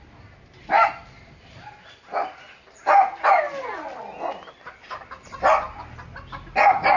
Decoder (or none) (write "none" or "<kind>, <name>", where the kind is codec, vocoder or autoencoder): none